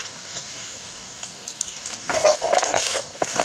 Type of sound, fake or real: fake